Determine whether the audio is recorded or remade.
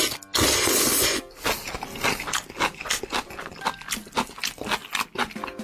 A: recorded